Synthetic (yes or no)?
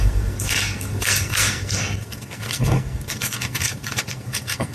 yes